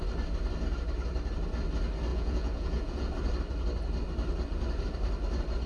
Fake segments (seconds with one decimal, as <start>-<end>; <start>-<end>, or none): 2.1-3.1